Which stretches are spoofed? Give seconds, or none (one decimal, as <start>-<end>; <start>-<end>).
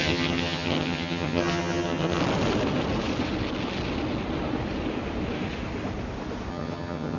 0.0-2.2; 6.5-7.2